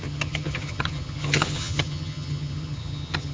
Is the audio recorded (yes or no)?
no